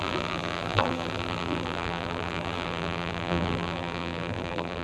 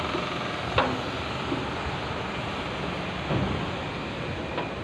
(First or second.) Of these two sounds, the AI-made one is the first